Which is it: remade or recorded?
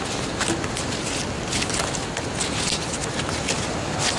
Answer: recorded